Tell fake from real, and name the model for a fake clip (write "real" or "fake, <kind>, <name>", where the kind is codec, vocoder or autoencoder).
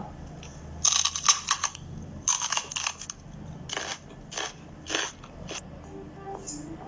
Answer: real